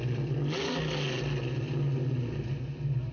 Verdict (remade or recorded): recorded